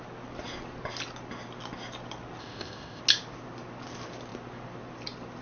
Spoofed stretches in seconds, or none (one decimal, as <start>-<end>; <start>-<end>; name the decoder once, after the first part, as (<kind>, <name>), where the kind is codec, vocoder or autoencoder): 2.4-3.0 (codec, ZipCodec)

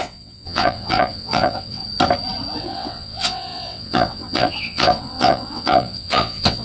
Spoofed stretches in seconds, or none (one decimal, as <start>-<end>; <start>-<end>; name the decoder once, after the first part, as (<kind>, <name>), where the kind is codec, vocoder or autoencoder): 0.0-1.8 (vocoder, WaveNeXt); 2.6-6.6